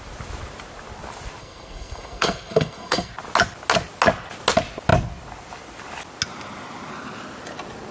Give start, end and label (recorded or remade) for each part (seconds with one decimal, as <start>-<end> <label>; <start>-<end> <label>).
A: 0.0-1.4 recorded; 1.4-3.1 remade; 3.1-7.9 recorded